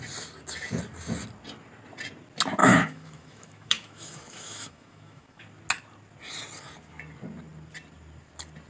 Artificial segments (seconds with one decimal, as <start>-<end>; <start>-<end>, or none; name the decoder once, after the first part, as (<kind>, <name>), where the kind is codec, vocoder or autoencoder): 2.6-5.4 (autoencoder, DAC-VAE)